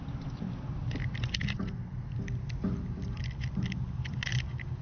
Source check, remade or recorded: recorded